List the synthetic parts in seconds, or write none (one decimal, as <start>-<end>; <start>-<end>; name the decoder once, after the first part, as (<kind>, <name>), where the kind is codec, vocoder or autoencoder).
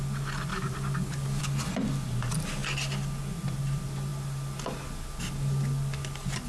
0.5-1.4 (codec, DAC)